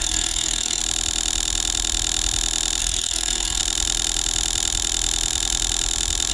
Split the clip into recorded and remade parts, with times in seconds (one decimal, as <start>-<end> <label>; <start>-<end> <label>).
0.0-0.8 remade; 0.8-2.8 recorded; 2.8-3.6 remade; 3.6-6.3 recorded